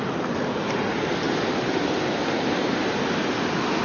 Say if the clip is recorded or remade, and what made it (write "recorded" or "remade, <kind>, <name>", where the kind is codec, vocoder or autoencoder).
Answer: recorded